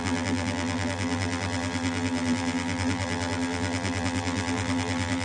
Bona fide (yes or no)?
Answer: no